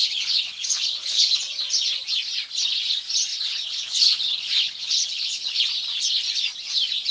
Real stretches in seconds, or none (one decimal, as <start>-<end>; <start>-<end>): 1.4-3.3; 5.6-7.1